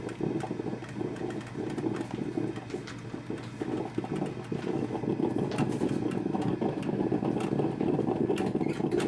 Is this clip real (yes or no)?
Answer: yes